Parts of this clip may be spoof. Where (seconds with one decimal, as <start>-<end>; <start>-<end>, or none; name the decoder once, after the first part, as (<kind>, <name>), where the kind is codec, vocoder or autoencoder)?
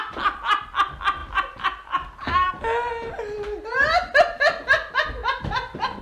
1.2-2.5 (vocoder, BigVGAN v2); 5.2-6.0